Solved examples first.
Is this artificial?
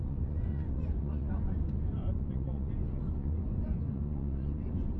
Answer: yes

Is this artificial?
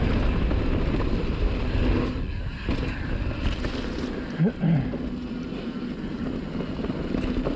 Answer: no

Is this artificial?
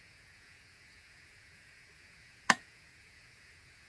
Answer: yes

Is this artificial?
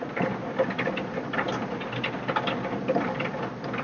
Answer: no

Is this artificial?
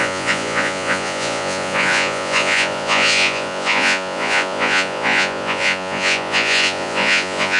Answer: yes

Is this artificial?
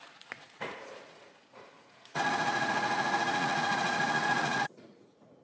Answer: yes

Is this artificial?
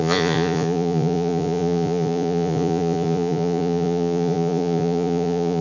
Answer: yes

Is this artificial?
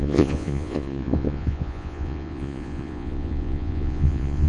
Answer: yes